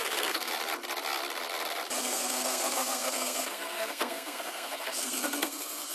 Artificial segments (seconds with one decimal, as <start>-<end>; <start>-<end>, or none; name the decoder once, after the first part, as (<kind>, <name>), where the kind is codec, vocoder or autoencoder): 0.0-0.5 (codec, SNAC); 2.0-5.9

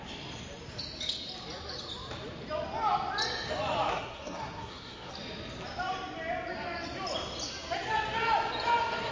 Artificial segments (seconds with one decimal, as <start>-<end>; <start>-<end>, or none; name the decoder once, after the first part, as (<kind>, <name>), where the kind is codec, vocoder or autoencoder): 3.9-5.1 (codec, SNAC)

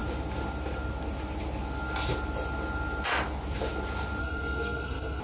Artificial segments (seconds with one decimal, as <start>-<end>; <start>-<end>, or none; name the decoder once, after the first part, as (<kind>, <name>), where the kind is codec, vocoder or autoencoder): 4.2-5.2 (codec, SNAC)

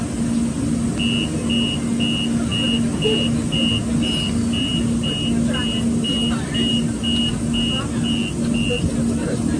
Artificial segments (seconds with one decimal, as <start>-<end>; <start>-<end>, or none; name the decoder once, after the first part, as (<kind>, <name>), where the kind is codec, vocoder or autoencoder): none

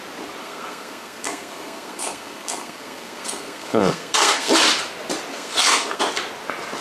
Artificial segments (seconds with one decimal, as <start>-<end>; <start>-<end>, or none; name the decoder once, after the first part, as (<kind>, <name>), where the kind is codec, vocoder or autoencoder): 0.4-4.5 (codec, SNAC); 5.3-6.0

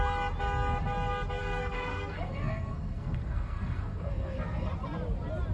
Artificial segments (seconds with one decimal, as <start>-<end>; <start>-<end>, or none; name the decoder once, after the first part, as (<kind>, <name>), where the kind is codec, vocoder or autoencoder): 1.4-4.7 (codec, SNAC)

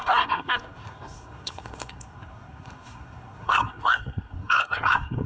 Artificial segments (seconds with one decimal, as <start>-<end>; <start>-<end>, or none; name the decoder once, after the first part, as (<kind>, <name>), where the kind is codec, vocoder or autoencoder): 0.0-5.3 (codec, SNAC)